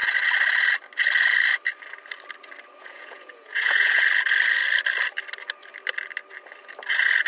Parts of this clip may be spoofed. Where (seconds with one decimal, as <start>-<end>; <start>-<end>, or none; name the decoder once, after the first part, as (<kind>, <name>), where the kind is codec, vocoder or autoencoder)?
2.8-4.0 (vocoder, Vocos)